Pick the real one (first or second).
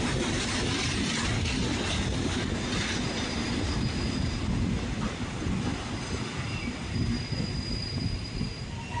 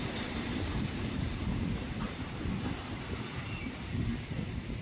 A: first